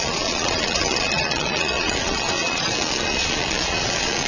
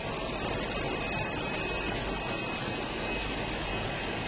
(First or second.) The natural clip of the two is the second